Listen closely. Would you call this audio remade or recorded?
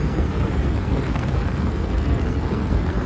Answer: remade